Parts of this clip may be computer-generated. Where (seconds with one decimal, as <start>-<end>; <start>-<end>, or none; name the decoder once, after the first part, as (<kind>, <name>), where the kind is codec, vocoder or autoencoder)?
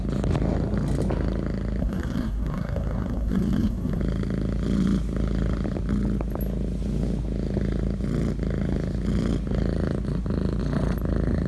1.8-4.0 (codec, SNAC)